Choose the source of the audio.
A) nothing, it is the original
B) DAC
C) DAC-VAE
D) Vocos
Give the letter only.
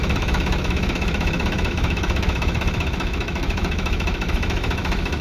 C